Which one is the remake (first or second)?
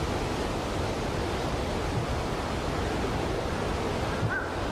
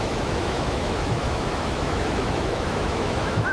second